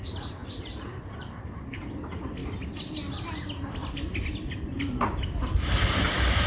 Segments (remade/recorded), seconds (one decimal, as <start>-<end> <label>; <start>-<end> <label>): 0.0-0.4 recorded; 0.4-1.9 remade; 1.9-6.5 recorded